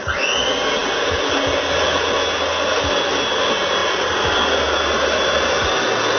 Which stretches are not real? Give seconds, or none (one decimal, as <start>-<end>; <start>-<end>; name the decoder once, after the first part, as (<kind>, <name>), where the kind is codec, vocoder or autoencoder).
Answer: 3.8-5.5 (vocoder, BigVGAN v2)